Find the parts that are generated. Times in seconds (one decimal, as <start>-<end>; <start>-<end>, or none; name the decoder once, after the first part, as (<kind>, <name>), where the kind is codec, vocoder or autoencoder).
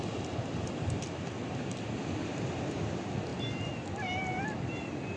2.2-2.9 (vocoder, BigVGAN v2)